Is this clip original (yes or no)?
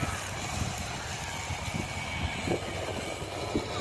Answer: yes